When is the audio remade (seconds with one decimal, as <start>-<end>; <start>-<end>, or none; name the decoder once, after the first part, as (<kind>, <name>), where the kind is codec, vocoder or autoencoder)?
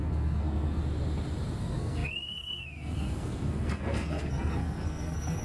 0.0-0.8 (codec, SNAC); 1.6-5.4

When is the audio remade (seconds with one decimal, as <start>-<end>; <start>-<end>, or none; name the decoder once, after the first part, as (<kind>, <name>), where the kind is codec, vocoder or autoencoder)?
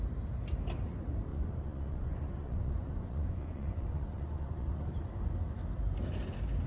1.3-5.3 (vocoder, Vocos)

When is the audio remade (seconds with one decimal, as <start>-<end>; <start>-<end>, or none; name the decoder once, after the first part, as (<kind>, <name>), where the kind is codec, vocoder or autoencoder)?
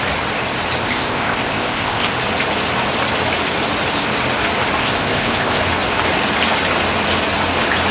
0.8-2.1 (codec, ZipCodec); 4.8-5.6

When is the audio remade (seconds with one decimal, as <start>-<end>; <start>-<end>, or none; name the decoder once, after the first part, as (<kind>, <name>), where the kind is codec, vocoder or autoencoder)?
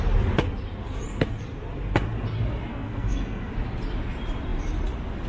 2.7-3.5 (codec, SNAC)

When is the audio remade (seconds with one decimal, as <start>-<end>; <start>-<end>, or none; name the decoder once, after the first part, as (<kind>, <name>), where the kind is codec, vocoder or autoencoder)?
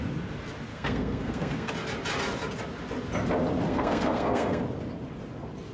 0.7-1.7 (codec, SNAC); 3.7-4.6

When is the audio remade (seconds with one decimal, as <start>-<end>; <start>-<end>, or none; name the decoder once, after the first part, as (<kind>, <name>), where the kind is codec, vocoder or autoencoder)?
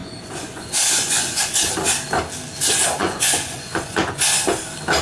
0.0-1.7 (vocoder, Vocos); 3.0-4.2